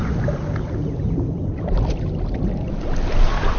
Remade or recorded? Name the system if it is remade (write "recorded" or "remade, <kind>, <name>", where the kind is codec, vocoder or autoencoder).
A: recorded